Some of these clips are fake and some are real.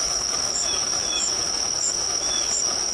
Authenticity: fake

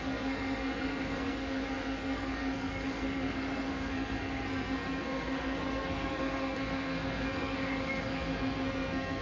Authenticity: fake